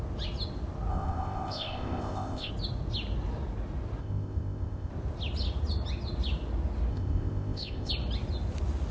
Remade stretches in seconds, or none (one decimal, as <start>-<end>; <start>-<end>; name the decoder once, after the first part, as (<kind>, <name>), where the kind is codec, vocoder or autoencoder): 0.9-2.5 (codec, ZipCodec); 4.0-4.9; 6.9-7.9